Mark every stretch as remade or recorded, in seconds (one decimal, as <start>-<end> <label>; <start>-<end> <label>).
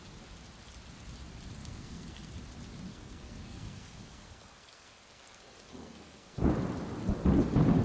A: 0.0-1.6 recorded; 1.6-2.3 remade; 2.3-2.9 recorded; 2.9-6.5 remade; 6.5-7.8 recorded